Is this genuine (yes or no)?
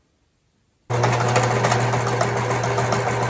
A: yes